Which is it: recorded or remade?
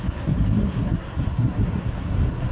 remade